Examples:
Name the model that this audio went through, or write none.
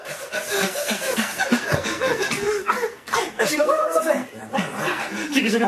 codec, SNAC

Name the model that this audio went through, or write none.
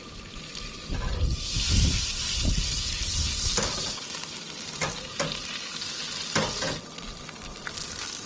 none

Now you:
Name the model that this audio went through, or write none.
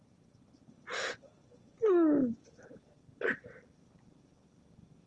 none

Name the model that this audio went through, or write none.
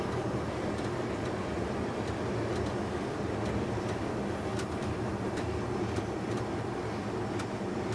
vocoder, BigVGAN v2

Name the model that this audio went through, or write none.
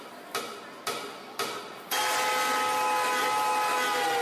none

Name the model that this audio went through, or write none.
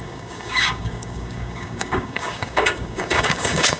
codec, DAC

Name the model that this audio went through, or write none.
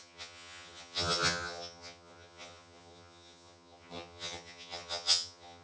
vocoder, HiFi-GAN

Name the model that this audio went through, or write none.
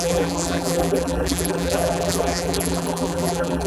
vocoder, BigVGAN v2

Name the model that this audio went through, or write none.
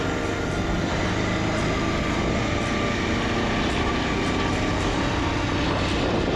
none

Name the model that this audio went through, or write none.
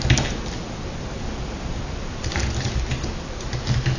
none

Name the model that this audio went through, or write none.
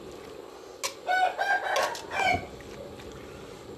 none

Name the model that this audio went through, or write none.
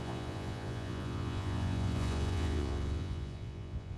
vocoder, Vocos